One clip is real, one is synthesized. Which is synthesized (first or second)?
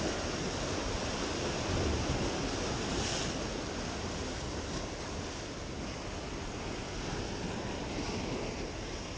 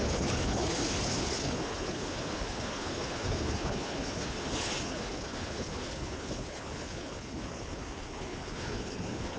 second